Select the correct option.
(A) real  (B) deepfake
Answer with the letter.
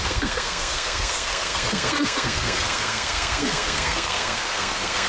B